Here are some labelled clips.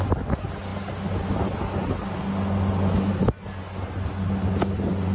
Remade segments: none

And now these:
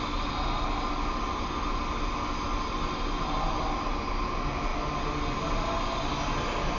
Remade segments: none

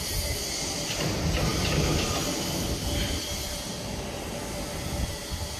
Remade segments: none

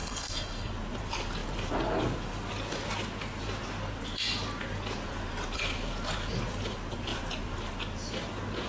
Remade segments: 0.0-0.7 (codec, SNAC)

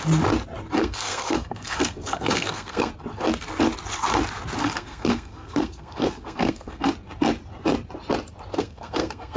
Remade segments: 0.8-2.9 (codec, SNAC); 4.6-6.9; 8.5-9.4